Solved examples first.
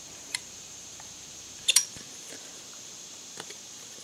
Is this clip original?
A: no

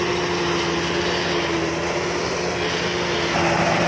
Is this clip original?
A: yes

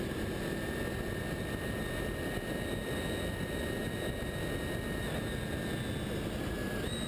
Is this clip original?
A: yes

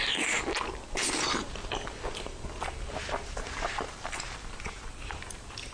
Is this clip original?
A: yes